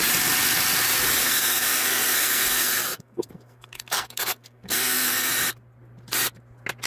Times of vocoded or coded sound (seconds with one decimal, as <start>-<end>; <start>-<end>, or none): 1.2-5.3